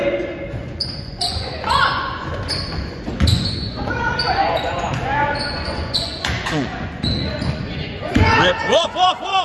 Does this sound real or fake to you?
fake